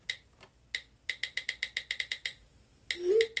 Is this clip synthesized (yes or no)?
no